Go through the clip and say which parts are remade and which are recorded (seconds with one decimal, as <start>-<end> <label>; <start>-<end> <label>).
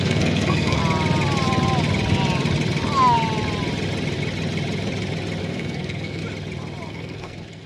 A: 0.0-0.8 remade; 0.8-5.4 recorded; 5.4-6.2 remade; 6.2-6.9 recorded; 6.9-7.7 remade